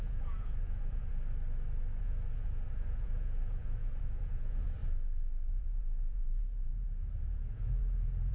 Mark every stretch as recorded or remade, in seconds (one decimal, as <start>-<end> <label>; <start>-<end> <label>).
0.0-1.1 remade; 1.1-2.0 recorded; 2.0-4.8 remade; 4.8-5.5 recorded; 5.5-8.3 remade